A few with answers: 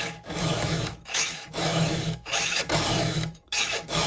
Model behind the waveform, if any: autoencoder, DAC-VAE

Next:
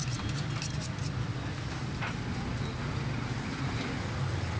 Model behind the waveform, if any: none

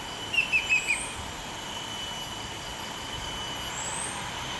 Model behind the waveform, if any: none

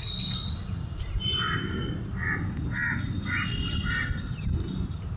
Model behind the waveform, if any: none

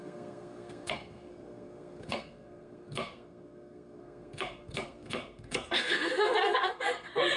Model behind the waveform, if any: codec, SNAC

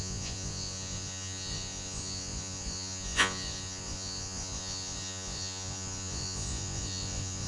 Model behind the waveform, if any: vocoder, Vocos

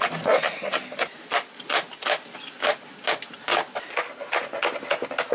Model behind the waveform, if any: none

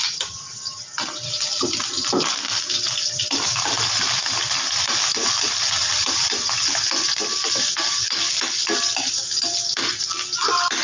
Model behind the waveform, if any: none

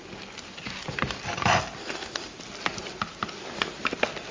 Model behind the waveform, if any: none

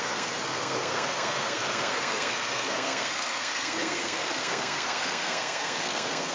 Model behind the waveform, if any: codec, SNAC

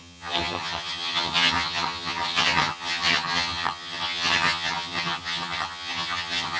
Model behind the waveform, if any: vocoder, HiFi-GAN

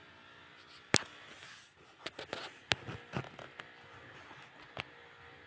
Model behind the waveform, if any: none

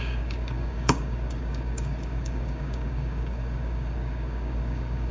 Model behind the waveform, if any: codec, DAC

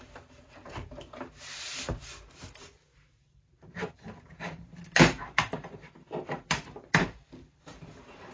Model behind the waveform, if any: vocoder, BigVGAN v2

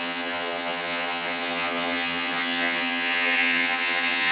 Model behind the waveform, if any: vocoder, HiFi-GAN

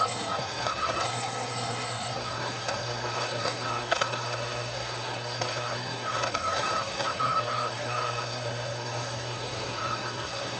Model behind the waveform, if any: codec, SNAC